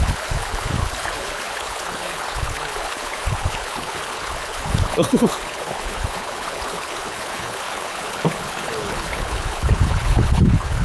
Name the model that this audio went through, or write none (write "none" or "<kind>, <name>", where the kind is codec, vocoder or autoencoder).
codec, HILCodec